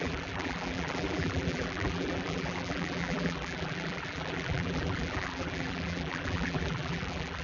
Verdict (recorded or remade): remade